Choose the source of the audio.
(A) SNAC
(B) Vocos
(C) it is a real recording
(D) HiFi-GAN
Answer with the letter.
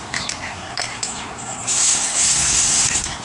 A